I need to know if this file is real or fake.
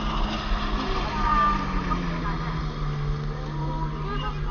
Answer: real